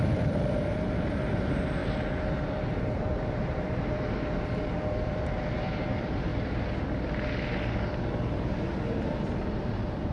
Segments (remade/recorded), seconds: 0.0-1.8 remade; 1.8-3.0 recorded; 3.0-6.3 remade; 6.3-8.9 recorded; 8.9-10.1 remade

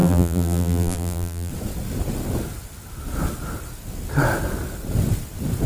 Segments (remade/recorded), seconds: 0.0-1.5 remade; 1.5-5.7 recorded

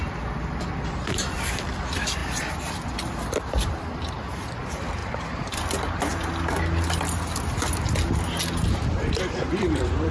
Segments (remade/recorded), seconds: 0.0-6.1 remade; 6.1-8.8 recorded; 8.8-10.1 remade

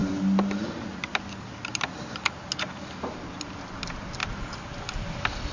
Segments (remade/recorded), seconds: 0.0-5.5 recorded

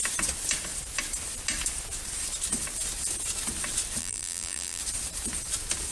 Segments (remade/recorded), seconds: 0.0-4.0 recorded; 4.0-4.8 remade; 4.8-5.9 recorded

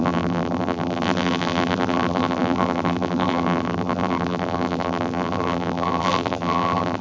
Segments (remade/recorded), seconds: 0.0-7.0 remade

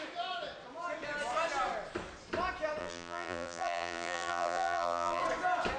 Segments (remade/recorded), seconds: 0.0-2.8 recorded; 2.8-5.2 remade; 5.2-5.8 recorded